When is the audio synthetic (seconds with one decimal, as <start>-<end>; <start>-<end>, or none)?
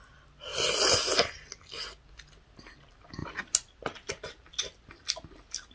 none